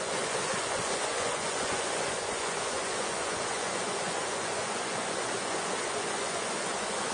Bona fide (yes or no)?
no